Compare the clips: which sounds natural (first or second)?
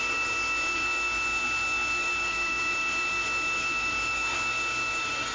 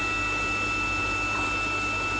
second